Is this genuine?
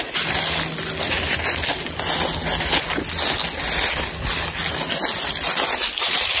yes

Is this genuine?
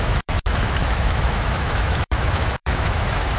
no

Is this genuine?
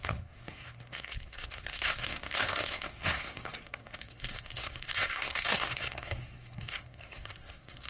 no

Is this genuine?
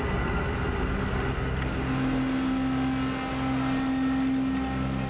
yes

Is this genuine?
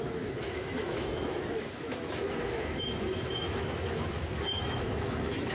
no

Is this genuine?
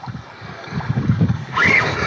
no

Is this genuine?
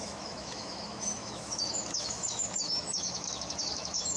no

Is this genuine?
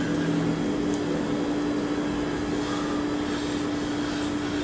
yes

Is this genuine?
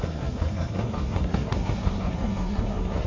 no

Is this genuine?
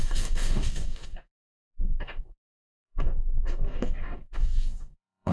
no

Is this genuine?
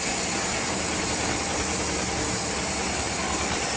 yes